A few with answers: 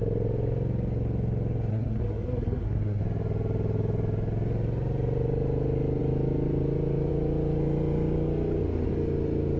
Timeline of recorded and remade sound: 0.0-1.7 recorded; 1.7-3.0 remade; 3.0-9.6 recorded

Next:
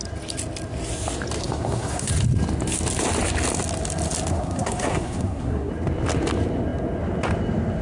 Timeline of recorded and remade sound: 0.0-1.4 recorded; 1.4-2.1 remade; 2.1-4.3 recorded; 4.3-5.7 remade; 5.7-7.8 recorded

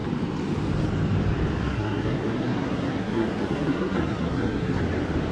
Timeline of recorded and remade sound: 0.0-1.6 recorded; 1.6-4.8 remade; 4.8-5.3 recorded

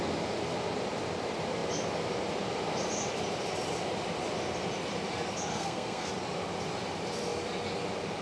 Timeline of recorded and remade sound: 0.0-5.5 recorded; 5.5-6.1 remade; 6.1-8.2 recorded

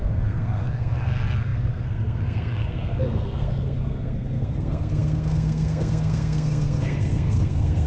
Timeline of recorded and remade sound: 0.0-7.9 remade

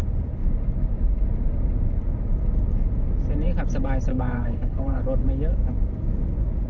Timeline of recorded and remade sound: 0.0-4.1 recorded; 4.1-5.0 remade; 5.0-6.7 recorded

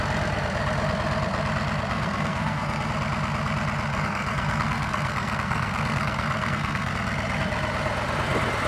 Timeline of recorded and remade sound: 0.0-1.9 recorded; 1.9-2.9 remade; 2.9-3.9 recorded; 3.9-6.9 remade; 6.9-8.7 recorded

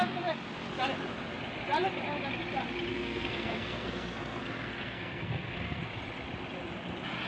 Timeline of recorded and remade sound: 0.0-2.9 recorded; 2.9-5.9 remade; 5.9-7.3 recorded